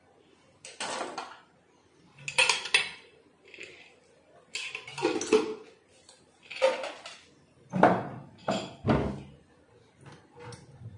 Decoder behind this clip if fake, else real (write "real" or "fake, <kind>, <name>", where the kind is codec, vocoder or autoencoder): real